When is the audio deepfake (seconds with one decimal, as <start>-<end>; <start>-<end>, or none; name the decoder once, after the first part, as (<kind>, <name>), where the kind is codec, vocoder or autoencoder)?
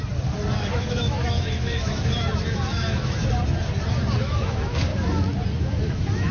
0.6-3.2 (autoencoder, DAC-VAE); 4.2-4.9; 5.6-6.3